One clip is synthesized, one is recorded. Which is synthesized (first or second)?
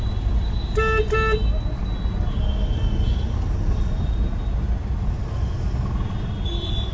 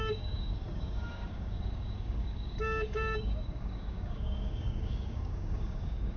second